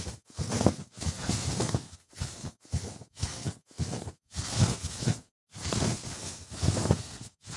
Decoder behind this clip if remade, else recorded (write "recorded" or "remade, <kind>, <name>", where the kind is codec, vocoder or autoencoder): remade, codec, SNAC